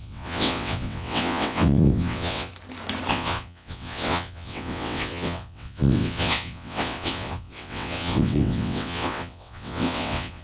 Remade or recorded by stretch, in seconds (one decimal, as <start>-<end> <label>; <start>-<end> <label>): 0.0-2.5 remade; 2.5-3.1 recorded; 3.1-10.4 remade